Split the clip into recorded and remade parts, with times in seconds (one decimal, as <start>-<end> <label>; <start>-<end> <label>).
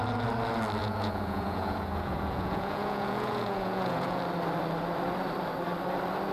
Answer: 0.0-0.8 recorded; 0.8-4.2 remade; 4.2-6.3 recorded